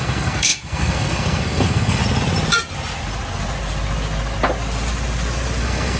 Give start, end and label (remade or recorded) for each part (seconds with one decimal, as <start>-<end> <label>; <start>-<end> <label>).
0.0-2.0 remade; 2.0-5.6 recorded; 5.6-6.0 remade